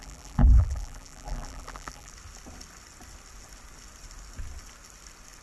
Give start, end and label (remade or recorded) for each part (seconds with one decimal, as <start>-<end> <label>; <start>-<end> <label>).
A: 0.0-2.1 remade; 2.1-5.4 recorded